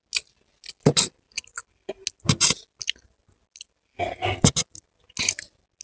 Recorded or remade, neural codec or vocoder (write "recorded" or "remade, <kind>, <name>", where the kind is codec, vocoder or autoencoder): recorded